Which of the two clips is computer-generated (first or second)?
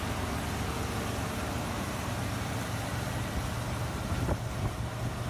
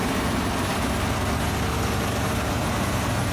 first